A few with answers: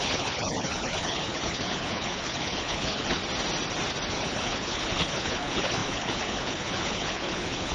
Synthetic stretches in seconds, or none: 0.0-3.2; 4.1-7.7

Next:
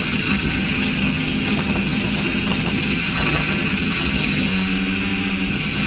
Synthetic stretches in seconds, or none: 0.0-4.5; 5.5-5.9